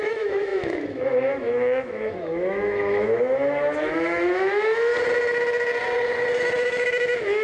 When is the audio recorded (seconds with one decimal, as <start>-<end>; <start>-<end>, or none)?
4.9-6.4